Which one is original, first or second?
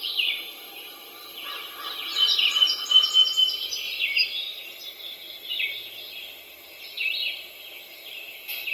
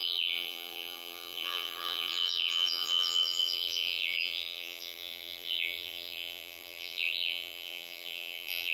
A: first